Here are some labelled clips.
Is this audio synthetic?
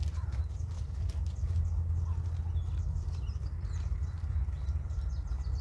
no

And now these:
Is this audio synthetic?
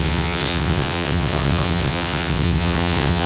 yes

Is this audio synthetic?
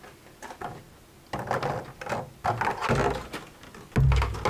no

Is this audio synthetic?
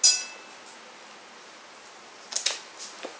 no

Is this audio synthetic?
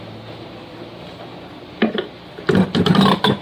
no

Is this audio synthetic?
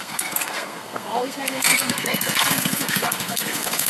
yes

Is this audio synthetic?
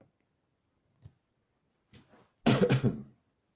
no